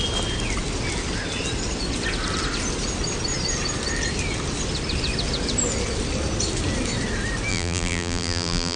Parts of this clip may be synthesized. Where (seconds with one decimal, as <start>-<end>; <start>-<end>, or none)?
7.5-8.8